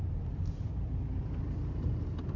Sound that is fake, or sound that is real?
real